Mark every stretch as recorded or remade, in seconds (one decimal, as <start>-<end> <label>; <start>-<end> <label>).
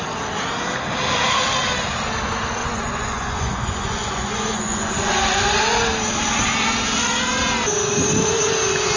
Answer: 0.0-2.6 recorded; 2.6-5.6 remade; 5.6-9.0 recorded